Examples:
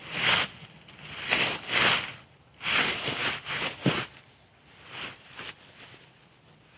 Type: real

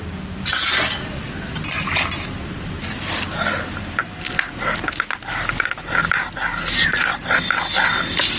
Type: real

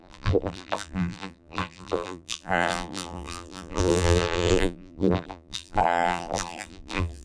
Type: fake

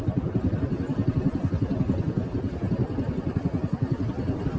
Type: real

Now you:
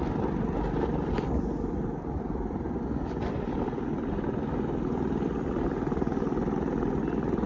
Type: real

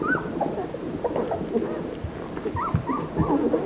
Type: real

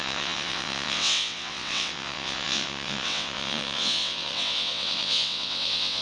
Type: fake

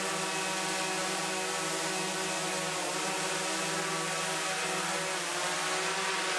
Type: real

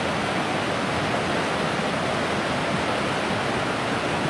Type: real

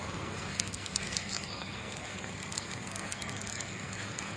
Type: fake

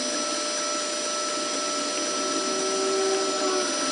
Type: real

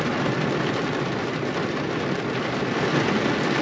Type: real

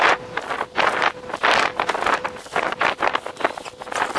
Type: real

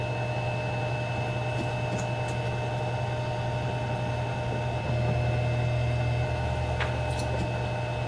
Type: real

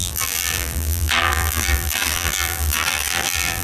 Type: fake